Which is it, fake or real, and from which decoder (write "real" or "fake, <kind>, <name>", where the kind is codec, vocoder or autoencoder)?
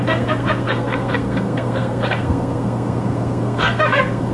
fake, codec, SNAC